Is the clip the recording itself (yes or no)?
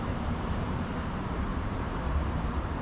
no